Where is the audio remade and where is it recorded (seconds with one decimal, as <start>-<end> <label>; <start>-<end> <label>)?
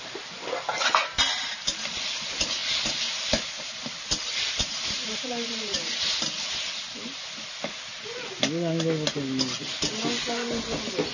0.0-2.6 recorded; 2.6-6.1 remade; 6.1-11.1 recorded